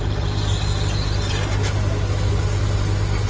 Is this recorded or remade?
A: recorded